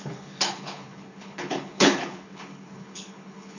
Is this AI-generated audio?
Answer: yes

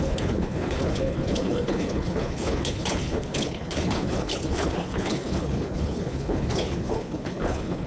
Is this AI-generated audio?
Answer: yes